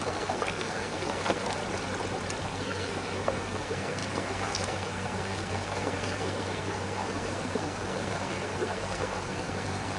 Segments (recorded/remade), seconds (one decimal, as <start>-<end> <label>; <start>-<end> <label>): 0.0-1.6 remade; 1.6-2.4 recorded; 2.4-10.0 remade